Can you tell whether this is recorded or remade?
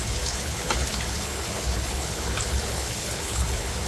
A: remade